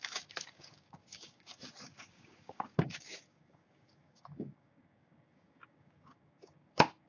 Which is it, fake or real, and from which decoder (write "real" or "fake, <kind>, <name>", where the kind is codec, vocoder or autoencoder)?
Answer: fake, codec, DAC